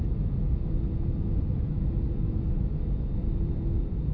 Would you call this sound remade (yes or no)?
yes